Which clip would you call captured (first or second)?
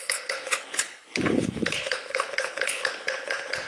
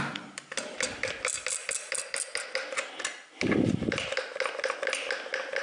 second